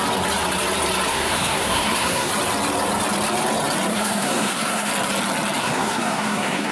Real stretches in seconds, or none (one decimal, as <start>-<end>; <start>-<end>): 0.0-1.1; 2.3-3.9; 4.9-5.6